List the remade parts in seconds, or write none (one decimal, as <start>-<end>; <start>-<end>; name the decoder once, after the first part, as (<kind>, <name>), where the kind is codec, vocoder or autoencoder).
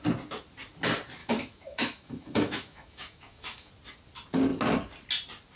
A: 1.2-3.7 (autoencoder, DAC-VAE)